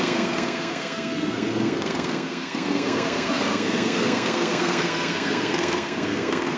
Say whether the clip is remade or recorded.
remade